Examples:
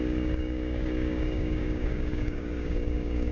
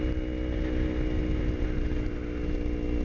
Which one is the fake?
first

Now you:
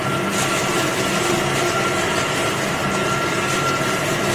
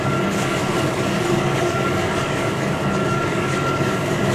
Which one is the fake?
second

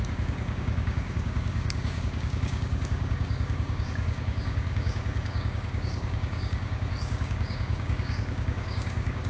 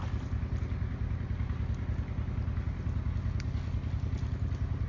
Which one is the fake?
first